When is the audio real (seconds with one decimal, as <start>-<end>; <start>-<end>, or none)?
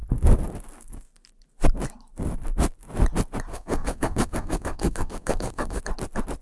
0.0-3.5; 5.8-6.4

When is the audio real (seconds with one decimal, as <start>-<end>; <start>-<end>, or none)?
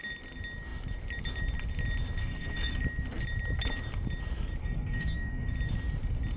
0.0-2.2; 2.8-4.6; 5.5-6.4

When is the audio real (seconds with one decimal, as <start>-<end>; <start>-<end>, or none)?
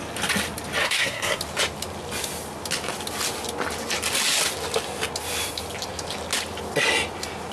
0.0-0.8; 1.4-7.5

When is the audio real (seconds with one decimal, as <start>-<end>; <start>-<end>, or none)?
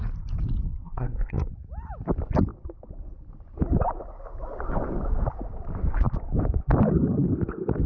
0.0-0.8; 1.5-7.9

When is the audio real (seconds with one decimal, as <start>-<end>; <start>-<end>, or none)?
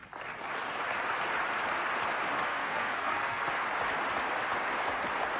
0.0-2.5; 3.5-5.4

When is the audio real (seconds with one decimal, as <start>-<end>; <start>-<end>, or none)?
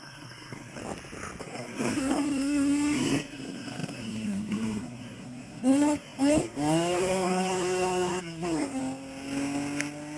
0.8-1.4; 8.8-10.2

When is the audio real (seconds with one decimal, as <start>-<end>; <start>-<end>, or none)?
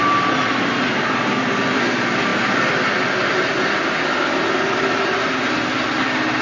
0.0-6.4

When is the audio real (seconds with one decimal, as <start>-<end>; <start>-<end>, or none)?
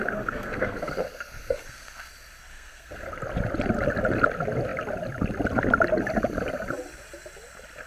2.1-2.5; 3.1-7.9